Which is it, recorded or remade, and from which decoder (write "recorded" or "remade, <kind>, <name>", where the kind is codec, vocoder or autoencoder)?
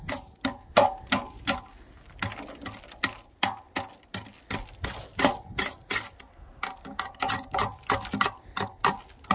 recorded